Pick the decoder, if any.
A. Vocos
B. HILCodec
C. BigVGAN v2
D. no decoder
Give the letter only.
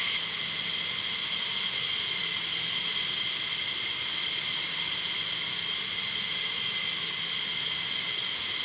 D